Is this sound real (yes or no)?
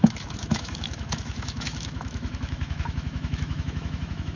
no